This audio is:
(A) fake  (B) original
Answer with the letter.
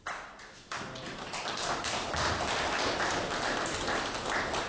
B